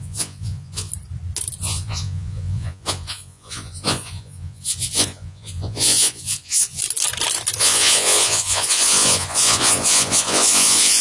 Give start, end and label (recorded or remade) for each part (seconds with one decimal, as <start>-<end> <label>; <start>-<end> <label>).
0.0-0.9 remade; 0.9-1.6 recorded; 1.6-6.8 remade; 6.8-7.6 recorded; 7.6-11.0 remade